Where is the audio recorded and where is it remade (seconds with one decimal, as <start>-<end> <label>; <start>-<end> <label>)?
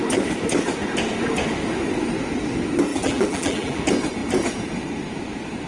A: 0.0-2.9 recorded; 2.9-3.8 remade; 3.8-5.7 recorded